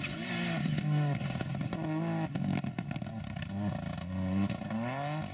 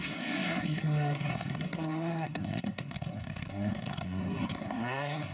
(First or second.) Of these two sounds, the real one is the first